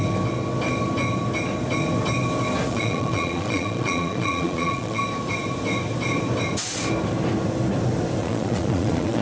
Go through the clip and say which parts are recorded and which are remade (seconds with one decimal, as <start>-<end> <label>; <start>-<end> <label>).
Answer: 0.0-2.7 recorded; 2.7-5.0 remade; 5.0-8.2 recorded; 8.2-9.2 remade